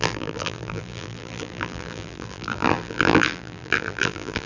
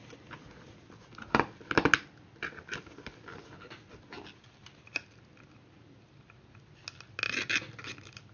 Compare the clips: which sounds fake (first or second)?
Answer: first